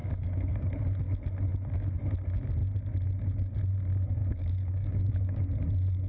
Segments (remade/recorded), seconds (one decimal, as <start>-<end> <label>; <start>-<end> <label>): 0.0-0.7 remade; 0.7-4.2 recorded; 4.2-5.6 remade; 5.6-6.1 recorded